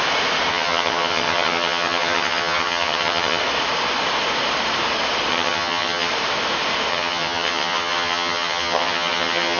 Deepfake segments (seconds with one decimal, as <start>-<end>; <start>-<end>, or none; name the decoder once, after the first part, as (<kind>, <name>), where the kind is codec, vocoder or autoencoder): 0.5-3.4 (vocoder, HiFi-GAN); 5.3-6.1; 6.9-9.6